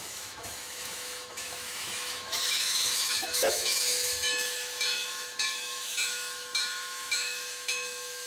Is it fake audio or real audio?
fake